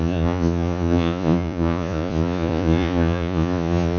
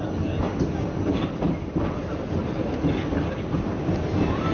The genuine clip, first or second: second